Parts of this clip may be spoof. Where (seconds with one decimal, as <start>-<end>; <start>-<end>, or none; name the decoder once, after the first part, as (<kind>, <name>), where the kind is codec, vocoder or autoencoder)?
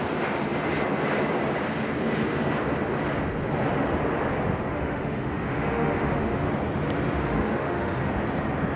4.7-6.5 (autoencoder, DAC-VAE); 7.2-8.1